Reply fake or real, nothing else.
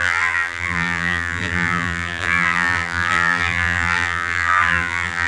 fake